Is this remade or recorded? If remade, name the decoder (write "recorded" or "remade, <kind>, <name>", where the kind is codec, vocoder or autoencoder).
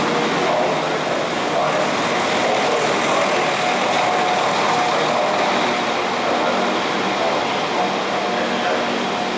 recorded